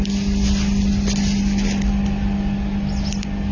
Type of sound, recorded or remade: recorded